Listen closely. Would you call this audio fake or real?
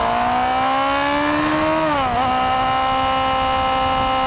real